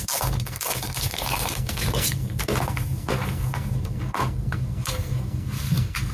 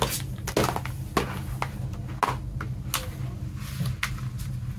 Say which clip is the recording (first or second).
second